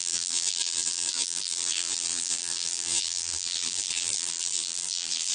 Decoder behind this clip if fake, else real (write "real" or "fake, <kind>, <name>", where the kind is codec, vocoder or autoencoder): fake, vocoder, BigVGAN v2